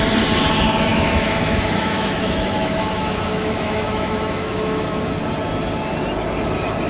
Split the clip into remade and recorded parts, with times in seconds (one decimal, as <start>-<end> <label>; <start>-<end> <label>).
0.0-0.9 recorded; 0.9-5.0 remade; 5.0-6.9 recorded